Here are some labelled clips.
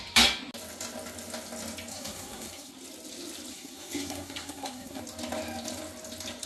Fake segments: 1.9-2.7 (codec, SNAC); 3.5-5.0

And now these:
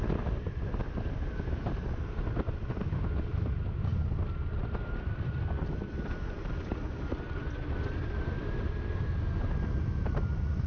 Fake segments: 3.9-6.5 (vocoder, BigVGAN v2)

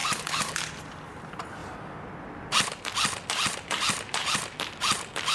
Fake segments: none

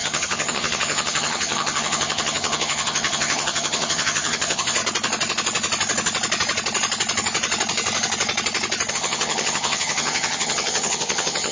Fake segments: 0.0-4.8 (vocoder, HiFi-GAN); 8.9-11.5

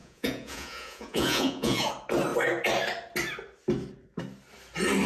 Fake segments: 0.0-1.9 (vocoder, Vocos)

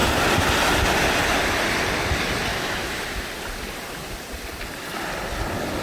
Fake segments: 2.5-3.3 (autoencoder, DAC-VAE)